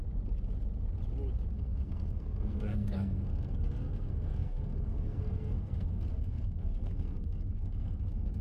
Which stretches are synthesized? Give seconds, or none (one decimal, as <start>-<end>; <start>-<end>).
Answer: 1.5-8.4